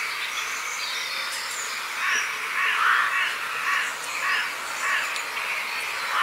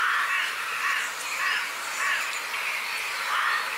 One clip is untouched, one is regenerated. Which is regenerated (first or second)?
second